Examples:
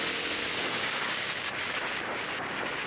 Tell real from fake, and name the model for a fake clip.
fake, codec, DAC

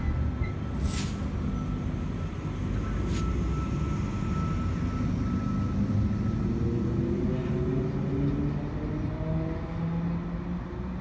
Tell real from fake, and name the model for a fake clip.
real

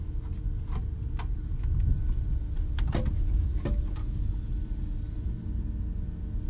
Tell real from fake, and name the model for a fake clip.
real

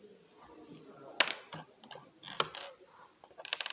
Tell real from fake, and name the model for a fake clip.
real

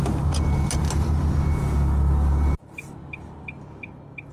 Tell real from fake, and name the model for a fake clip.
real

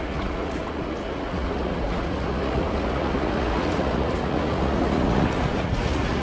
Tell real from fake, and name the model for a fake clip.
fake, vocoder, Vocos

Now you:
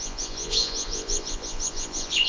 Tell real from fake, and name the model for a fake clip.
fake, vocoder, Vocos